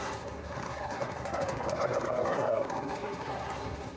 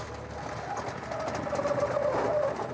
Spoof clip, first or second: first